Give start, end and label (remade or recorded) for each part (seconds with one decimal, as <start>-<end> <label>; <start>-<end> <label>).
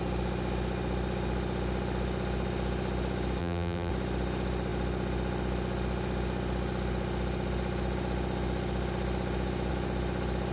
0.0-3.4 recorded; 3.4-3.9 remade; 3.9-10.5 recorded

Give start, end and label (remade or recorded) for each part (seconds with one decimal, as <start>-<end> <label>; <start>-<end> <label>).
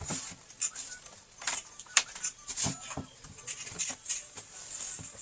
0.0-1.5 recorded; 1.5-4.3 remade; 4.3-5.2 recorded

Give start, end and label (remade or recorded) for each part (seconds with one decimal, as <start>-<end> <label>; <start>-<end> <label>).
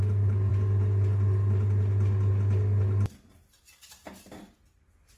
0.0-5.2 recorded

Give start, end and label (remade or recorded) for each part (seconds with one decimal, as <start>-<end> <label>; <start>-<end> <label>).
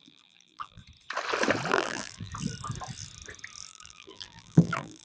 0.0-0.8 remade; 0.8-1.7 recorded; 1.7-2.3 remade; 2.3-3.7 recorded; 3.7-5.0 remade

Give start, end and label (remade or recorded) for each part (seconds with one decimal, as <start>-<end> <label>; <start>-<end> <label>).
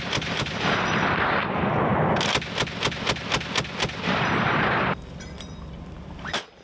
0.0-1.9 remade; 1.9-5.1 recorded; 5.1-6.6 remade